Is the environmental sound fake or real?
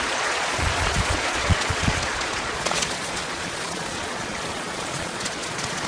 fake